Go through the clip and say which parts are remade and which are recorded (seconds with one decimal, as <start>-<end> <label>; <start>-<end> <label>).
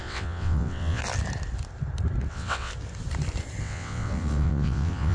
0.0-1.0 remade; 1.0-2.3 recorded; 2.3-2.7 remade; 2.7-3.6 recorded; 3.6-5.1 remade